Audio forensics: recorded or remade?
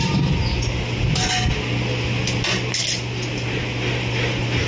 recorded